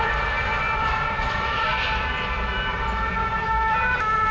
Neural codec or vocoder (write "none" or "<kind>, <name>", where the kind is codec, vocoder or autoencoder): vocoder, BigVGAN v2